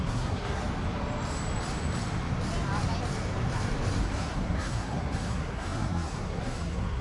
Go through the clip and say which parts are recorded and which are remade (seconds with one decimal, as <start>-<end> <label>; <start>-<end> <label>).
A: 0.0-0.6 remade; 0.6-4.0 recorded; 4.0-7.0 remade